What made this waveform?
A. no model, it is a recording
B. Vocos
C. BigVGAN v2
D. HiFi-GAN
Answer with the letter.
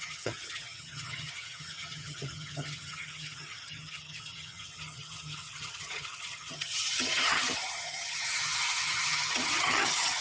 D